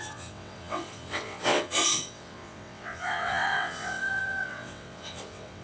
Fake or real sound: fake